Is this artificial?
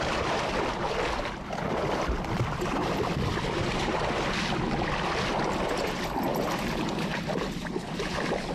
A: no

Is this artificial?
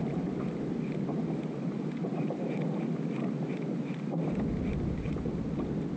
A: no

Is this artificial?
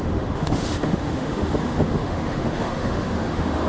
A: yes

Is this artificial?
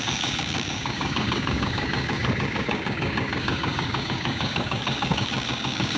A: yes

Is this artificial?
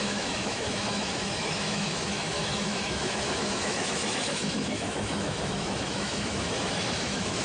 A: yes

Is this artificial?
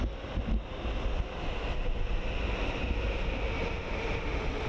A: no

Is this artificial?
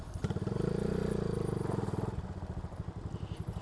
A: no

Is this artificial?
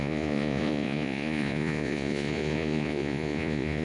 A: yes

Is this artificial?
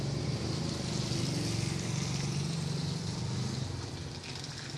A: no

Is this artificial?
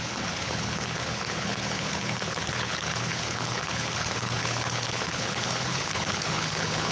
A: yes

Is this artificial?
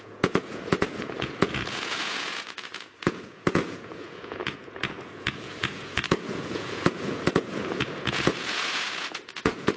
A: yes